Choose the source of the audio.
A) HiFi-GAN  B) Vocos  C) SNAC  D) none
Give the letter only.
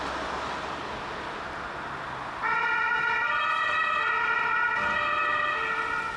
D